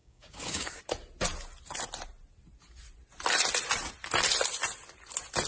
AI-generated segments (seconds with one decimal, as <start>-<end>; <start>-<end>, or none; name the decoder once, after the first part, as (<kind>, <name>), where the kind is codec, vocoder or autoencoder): 0.0-0.8 (codec, DAC)

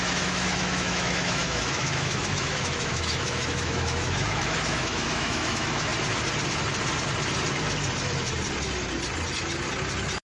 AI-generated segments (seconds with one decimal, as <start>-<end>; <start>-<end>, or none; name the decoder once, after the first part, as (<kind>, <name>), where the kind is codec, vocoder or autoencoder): 0.0-5.9 (autoencoder, DAC-VAE)